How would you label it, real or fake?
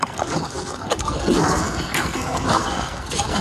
fake